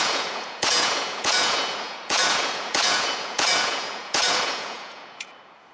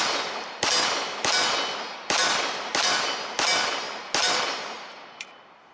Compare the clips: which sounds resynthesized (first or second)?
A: first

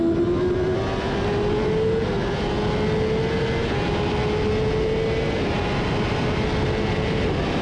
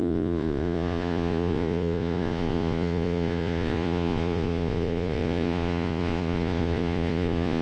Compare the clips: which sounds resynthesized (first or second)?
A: second